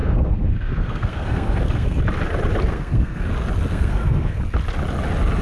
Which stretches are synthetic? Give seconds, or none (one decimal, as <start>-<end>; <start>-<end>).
0.0-2.0; 2.7-3.3; 3.7-4.4

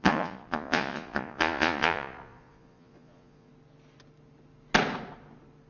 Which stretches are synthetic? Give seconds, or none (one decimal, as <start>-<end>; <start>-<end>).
0.0-3.5

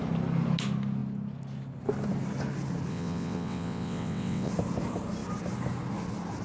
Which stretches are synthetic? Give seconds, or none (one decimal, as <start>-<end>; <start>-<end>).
2.9-4.5

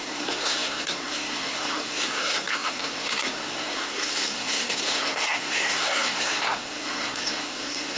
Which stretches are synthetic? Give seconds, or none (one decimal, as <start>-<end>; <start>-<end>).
0.0-8.0